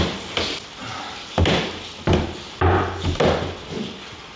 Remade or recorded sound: recorded